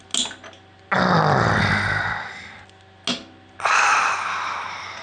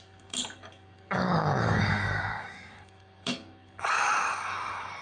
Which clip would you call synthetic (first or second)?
second